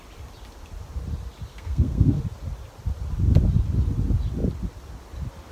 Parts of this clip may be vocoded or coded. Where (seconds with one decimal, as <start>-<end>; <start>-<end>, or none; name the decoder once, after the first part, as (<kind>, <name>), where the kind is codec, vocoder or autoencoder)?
1.5-2.2 (codec, SNAC)